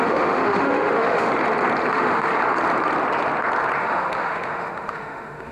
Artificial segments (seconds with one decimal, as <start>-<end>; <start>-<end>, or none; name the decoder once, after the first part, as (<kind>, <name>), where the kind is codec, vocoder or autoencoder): 0.0-1.3 (autoencoder, DAC-VAE); 1.9-2.3; 3.8-5.5